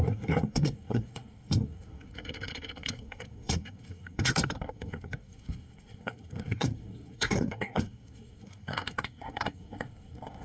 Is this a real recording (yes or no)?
no